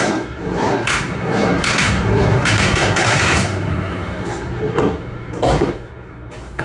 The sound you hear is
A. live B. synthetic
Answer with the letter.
B